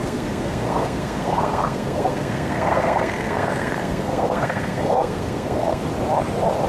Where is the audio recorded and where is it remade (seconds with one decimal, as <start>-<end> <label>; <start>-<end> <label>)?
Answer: 0.0-5.8 remade; 5.8-6.7 recorded

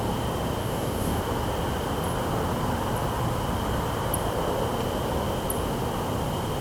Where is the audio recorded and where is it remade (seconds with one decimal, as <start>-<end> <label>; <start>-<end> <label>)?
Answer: 0.0-0.6 recorded; 0.6-1.2 remade; 1.2-6.6 recorded

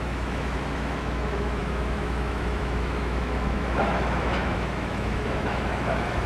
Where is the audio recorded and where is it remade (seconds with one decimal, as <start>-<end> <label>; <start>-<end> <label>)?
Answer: 0.0-6.3 remade

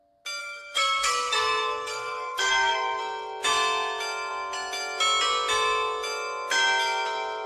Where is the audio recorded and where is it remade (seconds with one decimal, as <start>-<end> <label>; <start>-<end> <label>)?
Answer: 0.0-0.4 recorded; 0.4-3.0 remade; 3.0-7.5 recorded

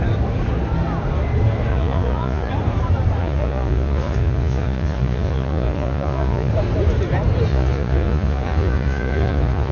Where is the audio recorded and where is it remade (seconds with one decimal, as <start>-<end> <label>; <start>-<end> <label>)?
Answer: 0.0-1.7 recorded; 1.7-2.5 remade; 2.5-3.2 recorded; 3.2-6.5 remade; 6.5-7.5 recorded; 7.5-9.7 remade